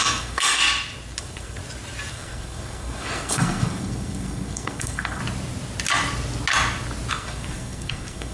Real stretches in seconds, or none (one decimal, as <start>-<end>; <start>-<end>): 0.6-1.2; 1.6-2.1; 5.2-7.1